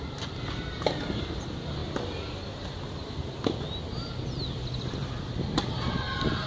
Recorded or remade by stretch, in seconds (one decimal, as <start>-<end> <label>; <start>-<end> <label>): 0.0-6.5 recorded